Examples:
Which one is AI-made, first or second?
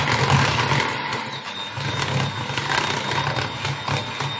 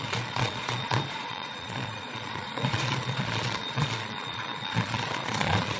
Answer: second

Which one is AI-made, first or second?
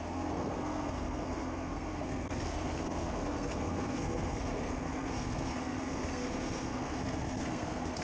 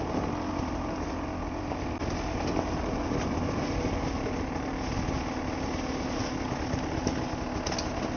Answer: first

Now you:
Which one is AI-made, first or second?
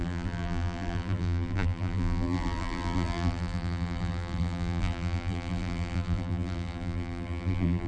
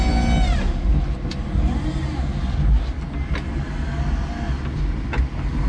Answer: first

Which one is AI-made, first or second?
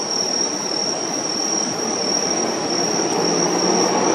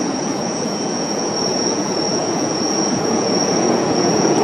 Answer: second